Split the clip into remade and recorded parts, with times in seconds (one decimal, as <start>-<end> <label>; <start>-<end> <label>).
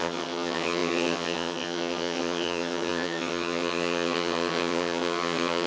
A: 0.0-5.7 remade